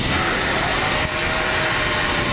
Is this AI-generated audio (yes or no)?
no